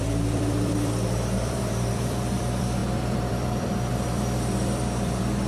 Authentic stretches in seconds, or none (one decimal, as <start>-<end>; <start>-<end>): none